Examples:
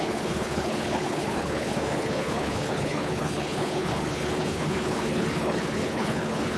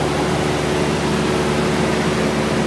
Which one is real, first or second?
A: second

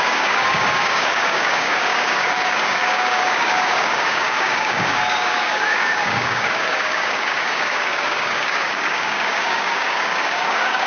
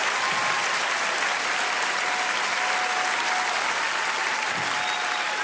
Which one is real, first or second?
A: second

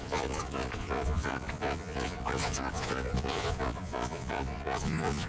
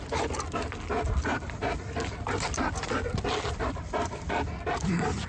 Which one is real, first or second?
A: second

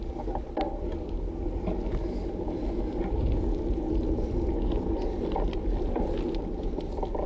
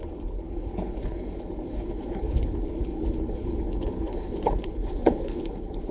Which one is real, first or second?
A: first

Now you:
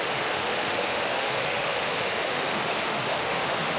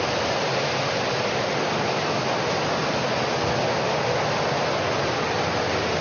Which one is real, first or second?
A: second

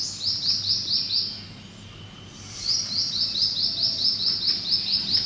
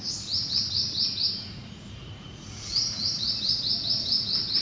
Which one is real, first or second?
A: first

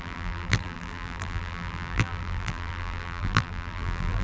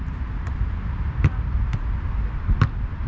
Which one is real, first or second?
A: second